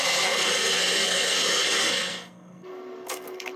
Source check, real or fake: fake